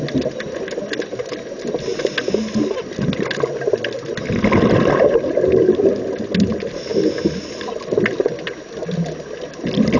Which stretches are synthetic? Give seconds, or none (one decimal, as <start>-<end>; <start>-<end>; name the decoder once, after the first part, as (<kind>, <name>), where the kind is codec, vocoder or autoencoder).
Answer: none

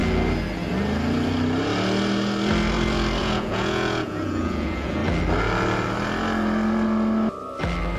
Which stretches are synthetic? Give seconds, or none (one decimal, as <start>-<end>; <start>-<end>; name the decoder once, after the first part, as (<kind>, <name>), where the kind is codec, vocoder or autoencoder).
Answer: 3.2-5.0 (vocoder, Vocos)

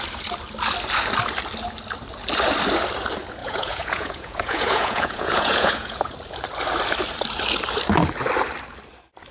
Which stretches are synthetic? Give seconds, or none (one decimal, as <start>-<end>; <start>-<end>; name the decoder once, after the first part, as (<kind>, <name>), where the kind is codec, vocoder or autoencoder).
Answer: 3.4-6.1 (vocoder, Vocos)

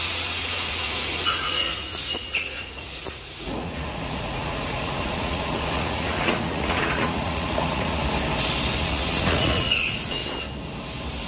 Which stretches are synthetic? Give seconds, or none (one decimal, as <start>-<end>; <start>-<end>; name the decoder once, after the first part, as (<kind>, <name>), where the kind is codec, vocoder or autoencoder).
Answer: 0.0-8.0 (vocoder, Vocos); 8.8-10.2

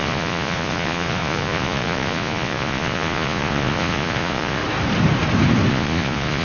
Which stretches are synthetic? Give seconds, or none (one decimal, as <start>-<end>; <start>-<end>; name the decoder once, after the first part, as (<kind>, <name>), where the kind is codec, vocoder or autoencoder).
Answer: 0.0-4.6 (vocoder, Vocos); 5.7-6.4

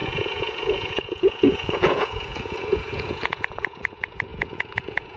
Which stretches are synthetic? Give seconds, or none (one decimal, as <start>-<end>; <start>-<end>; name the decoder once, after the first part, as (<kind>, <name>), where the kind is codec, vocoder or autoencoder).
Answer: 0.0-5.2 (vocoder, Vocos)